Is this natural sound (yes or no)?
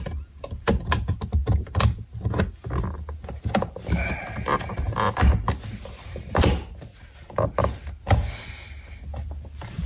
yes